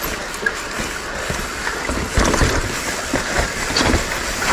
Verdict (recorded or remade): recorded